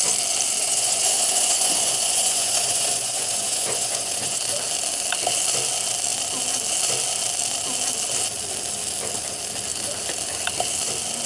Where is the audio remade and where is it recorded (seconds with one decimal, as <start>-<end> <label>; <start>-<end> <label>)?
0.0-0.6 recorded; 0.6-4.4 remade; 4.4-11.3 recorded